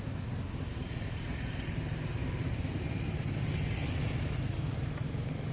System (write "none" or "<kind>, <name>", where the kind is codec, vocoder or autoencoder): none